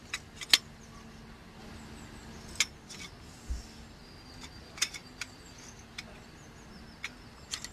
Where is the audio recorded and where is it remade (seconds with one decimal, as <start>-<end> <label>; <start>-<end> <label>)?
0.0-7.7 recorded

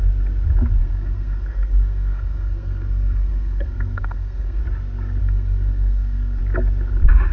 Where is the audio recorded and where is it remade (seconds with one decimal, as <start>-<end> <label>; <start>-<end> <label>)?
0.0-0.8 recorded; 0.8-4.6 remade; 4.6-5.2 recorded; 5.2-6.4 remade; 6.4-7.3 recorded

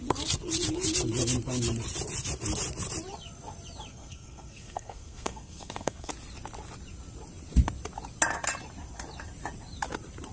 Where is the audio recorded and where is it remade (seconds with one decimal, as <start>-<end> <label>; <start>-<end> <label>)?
0.0-3.9 recorded; 3.9-6.1 remade; 6.1-10.3 recorded

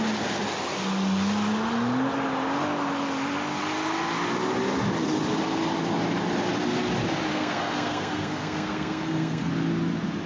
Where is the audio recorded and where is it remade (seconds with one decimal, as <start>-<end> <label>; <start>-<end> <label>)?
0.0-7.3 recorded; 7.3-9.5 remade; 9.5-10.3 recorded

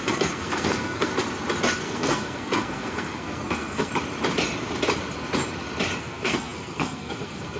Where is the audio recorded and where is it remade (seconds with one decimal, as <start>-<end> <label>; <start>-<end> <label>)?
0.0-1.1 remade; 1.1-1.8 recorded; 1.8-3.9 remade; 3.9-6.0 recorded; 6.0-7.6 remade